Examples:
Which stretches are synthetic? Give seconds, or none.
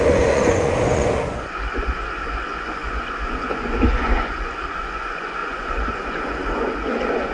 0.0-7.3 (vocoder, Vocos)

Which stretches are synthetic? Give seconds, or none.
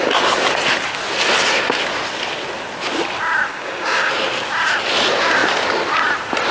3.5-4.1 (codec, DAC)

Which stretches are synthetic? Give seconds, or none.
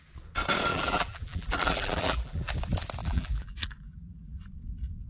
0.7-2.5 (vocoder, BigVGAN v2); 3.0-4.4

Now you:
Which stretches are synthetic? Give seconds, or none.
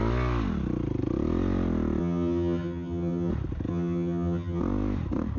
2.0-3.3 (vocoder, HiFi-GAN); 3.7-4.6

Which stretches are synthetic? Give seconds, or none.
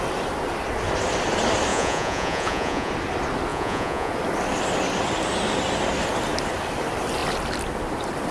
1.7-2.9 (vocoder, Vocos); 3.5-4.1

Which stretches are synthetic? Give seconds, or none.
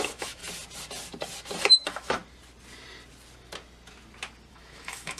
0.0-0.4 (autoencoder, DAC-VAE); 1.6-2.2; 4.5-5.2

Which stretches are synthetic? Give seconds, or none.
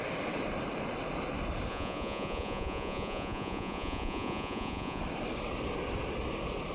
1.7-5.0 (vocoder, Vocos)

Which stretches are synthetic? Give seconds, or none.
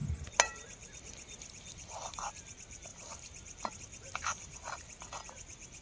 none